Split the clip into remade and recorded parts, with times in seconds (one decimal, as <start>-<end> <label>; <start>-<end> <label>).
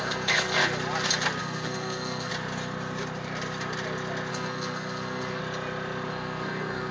0.0-0.6 remade; 0.6-1.4 recorded; 1.4-2.3 remade; 2.3-4.3 recorded; 4.3-5.4 remade; 5.4-6.1 recorded; 6.1-6.9 remade